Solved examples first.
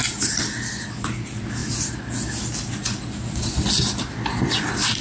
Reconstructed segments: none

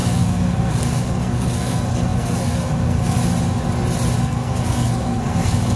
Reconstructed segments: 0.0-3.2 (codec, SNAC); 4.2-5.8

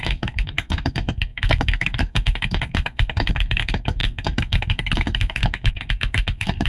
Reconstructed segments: 0.0-6.7 (codec, SNAC)

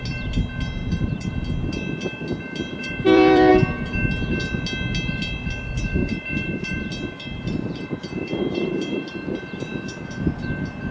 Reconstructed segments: 0.8-1.3 (vocoder, BigVGAN v2); 2.7-3.5; 6.0-9.4

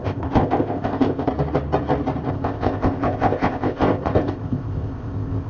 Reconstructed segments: 0.0-1.3 (codec, ZipCodec); 2.3-5.5